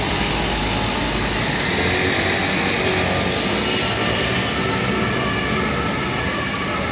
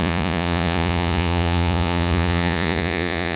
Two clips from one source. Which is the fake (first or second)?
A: second